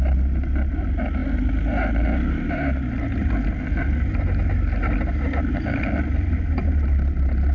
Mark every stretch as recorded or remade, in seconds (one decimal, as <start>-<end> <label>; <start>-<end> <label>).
0.0-7.5 recorded